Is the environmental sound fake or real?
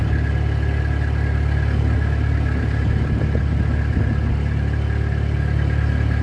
real